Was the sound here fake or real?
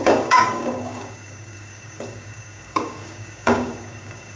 fake